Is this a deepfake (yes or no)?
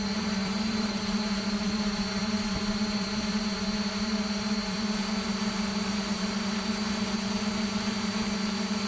yes